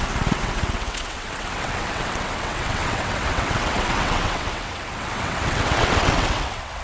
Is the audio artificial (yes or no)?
yes